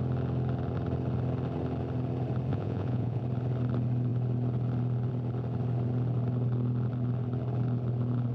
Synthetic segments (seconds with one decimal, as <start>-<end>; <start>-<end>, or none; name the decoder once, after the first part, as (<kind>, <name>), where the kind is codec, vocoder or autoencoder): 2.5-3.2 (vocoder, Vocos)

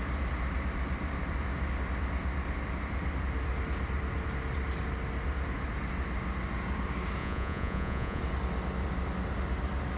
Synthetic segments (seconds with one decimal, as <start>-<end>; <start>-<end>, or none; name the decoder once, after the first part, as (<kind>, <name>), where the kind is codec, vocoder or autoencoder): 7.2-8.2 (vocoder, Vocos)

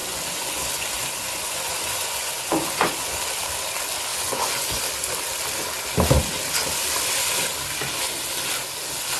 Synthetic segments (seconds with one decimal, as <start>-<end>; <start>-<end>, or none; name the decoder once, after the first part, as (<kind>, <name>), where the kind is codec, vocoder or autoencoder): 0.0-3.2 (vocoder, Vocos); 4.1-4.8